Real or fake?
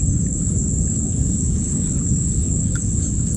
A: fake